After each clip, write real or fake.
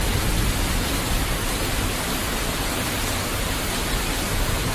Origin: real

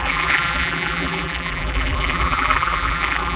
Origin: fake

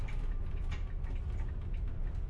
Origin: real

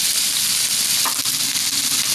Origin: fake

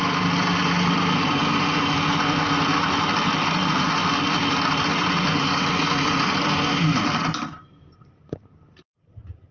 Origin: fake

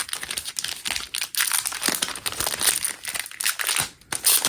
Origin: real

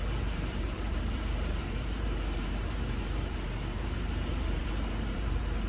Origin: fake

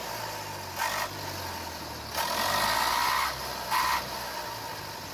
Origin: real